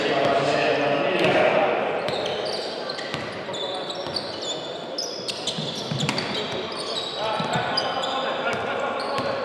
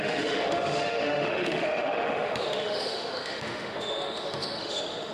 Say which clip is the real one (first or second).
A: first